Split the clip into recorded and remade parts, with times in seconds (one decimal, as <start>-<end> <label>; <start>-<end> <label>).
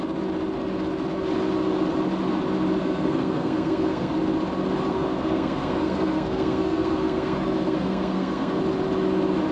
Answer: 0.0-2.8 recorded; 2.8-4.1 remade; 4.1-4.9 recorded; 4.9-8.6 remade; 8.6-9.5 recorded